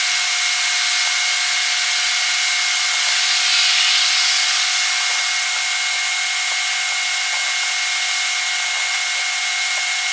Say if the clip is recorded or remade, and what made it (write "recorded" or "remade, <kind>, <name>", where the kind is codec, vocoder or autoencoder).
recorded